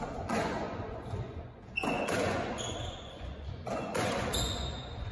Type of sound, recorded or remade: remade